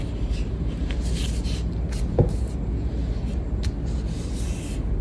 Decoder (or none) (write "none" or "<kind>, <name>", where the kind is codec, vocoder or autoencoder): none